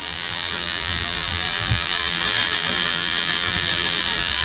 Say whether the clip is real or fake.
fake